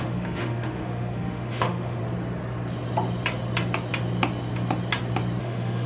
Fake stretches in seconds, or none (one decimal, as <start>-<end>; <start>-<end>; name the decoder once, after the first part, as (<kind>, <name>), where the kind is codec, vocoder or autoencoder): 0.0-2.0 (autoencoder, DAC-VAE); 5.4-5.9